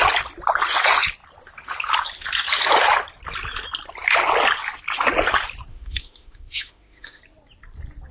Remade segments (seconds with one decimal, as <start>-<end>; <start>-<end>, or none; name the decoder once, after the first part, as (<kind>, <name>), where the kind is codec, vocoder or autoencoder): 5.7-7.2 (autoencoder, DAC-VAE)